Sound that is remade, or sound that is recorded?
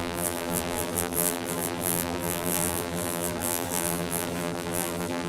remade